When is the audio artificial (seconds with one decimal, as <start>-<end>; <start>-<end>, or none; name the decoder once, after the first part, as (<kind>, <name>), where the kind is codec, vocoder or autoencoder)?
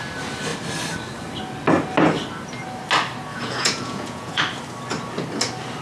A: 3.3-4.4 (vocoder, Vocos)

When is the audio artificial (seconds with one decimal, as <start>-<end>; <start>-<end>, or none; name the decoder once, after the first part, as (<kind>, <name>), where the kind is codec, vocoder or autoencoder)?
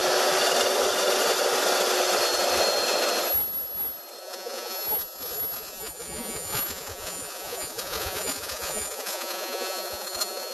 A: 4.2-10.5 (vocoder, Vocos)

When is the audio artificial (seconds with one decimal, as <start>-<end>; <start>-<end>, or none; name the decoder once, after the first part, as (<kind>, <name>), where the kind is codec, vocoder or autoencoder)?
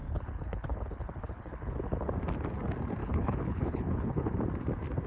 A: 0.0-2.1 (codec, HILCodec); 3.0-4.4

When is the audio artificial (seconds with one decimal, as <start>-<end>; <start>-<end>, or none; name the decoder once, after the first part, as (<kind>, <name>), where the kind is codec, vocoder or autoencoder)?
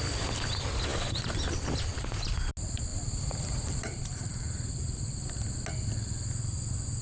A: 2.9-4.7 (vocoder, BigVGAN v2)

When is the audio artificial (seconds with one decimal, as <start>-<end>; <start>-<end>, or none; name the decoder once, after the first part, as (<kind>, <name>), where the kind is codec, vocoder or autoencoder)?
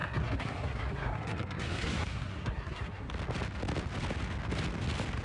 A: 0.0-3.1 (codec, SNAC)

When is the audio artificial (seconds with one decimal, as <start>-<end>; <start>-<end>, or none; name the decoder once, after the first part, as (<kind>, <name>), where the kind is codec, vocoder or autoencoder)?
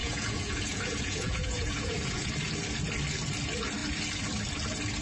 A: 0.0-2.3 (vocoder, Vocos)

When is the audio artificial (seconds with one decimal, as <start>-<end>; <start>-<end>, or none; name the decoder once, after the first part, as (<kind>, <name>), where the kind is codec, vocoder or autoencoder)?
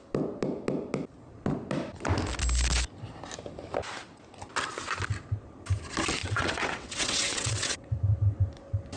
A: 6.2-7.9 (vocoder, WaveNeXt)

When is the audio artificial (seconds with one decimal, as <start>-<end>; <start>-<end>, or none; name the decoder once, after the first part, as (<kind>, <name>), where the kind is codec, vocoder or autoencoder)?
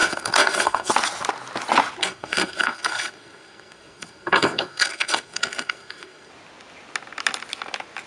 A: 0.0-0.9 (codec, SNAC); 2.0-6.3